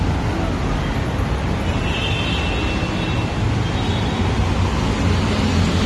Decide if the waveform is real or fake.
real